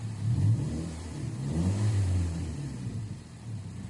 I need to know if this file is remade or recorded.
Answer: remade